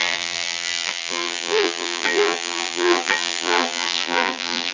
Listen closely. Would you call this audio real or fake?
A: fake